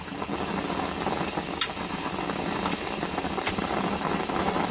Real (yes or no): yes